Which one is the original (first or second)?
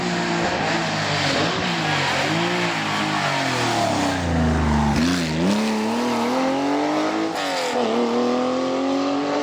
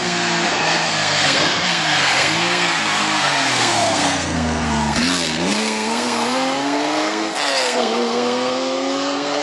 first